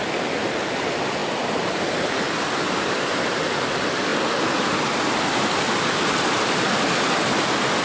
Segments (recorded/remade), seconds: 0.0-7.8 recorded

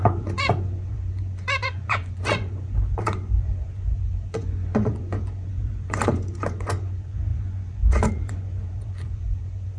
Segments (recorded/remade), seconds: 0.0-9.8 remade

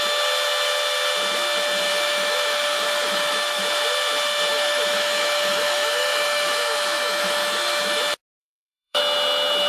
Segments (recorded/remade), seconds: 0.0-1.9 recorded; 1.9-3.6 remade; 3.6-4.5 recorded; 4.5-8.0 remade; 8.0-8.4 recorded; 8.4-9.0 remade; 9.0-9.7 recorded

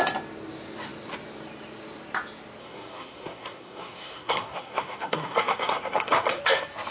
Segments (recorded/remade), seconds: 0.0-2.6 recorded; 2.6-6.4 remade; 6.4-6.9 recorded